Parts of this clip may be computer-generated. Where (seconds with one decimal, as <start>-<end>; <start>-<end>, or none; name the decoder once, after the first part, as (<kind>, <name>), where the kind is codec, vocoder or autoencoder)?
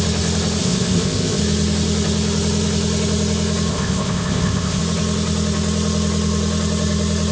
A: 0.6-1.4 (codec, ZipCodec); 3.7-4.8